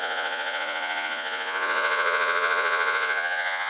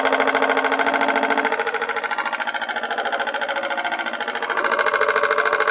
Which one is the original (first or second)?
second